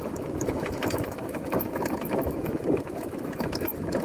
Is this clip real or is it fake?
fake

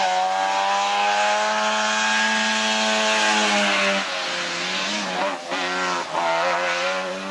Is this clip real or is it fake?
real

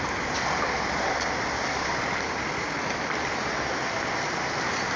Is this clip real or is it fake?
real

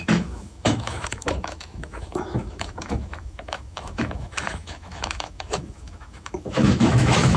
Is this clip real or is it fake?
fake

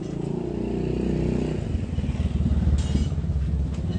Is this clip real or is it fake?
real